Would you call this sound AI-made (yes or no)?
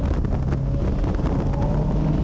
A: no